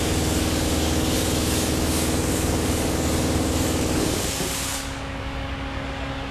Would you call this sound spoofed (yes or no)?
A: yes